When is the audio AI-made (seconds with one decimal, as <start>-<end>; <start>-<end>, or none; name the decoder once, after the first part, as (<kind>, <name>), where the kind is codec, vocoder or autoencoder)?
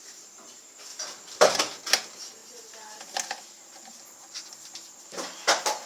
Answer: 0.9-1.6 (vocoder, BigVGAN v2)